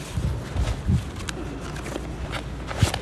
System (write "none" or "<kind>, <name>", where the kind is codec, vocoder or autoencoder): none